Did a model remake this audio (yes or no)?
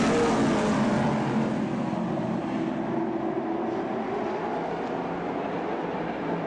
no